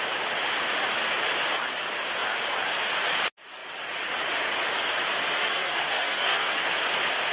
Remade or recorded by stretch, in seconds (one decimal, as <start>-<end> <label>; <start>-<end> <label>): 0.0-5.4 recorded; 5.4-6.6 remade; 6.6-7.3 recorded